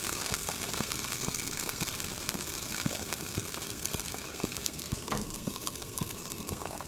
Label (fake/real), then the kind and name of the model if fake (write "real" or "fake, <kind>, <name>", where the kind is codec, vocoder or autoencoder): fake, codec, SNAC